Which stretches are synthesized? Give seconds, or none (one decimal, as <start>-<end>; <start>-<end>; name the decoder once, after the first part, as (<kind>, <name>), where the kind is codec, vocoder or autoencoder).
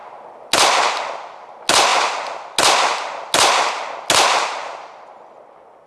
none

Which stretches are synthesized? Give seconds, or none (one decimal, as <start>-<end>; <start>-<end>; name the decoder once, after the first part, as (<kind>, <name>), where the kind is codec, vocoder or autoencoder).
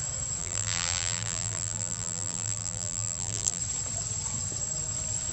0.4-3.6 (vocoder, BigVGAN v2)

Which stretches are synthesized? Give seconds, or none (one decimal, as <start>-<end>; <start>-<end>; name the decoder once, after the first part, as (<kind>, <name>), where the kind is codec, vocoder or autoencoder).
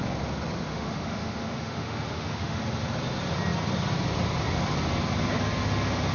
0.7-2.6 (autoencoder, DAC-VAE)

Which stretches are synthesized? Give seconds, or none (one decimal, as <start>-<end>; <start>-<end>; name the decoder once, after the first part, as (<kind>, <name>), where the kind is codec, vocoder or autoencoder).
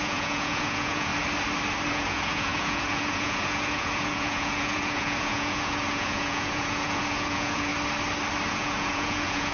0.0-1.1 (vocoder, Vocos); 1.9-7.7; 8.5-9.5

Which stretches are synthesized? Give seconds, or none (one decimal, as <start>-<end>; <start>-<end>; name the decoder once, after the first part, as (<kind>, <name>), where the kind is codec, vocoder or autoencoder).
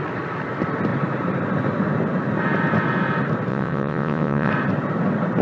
3.5-4.5 (vocoder, WaveNeXt)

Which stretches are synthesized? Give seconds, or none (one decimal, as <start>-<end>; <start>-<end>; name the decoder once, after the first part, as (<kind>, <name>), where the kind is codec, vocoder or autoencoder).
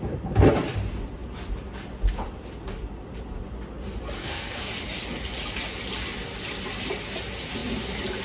4.2-4.7 (codec, SNAC)